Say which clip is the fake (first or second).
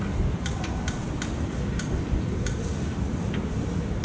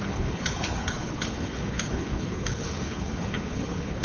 second